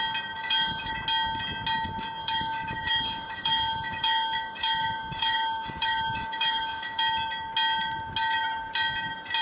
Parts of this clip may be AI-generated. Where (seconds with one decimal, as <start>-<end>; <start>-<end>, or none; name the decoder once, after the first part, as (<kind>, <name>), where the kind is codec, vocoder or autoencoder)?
0.4-0.9 (autoencoder, DAC-VAE); 2.2-7.0